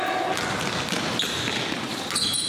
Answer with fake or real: real